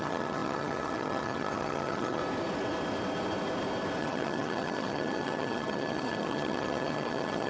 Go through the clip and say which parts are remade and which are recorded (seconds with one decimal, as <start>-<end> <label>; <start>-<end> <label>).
0.0-2.2 remade; 2.2-4.0 recorded; 4.0-7.5 remade